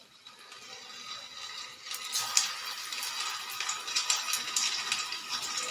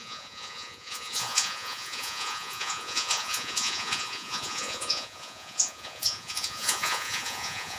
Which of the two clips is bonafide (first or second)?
first